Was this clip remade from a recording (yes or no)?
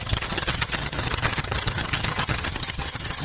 yes